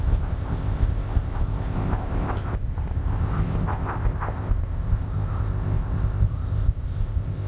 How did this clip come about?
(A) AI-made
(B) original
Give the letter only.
A